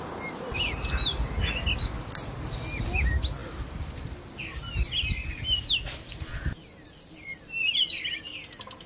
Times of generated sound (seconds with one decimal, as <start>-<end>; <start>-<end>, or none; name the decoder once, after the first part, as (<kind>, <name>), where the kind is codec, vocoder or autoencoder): 3.4-3.9 (vocoder, BigVGAN v2); 4.5-8.2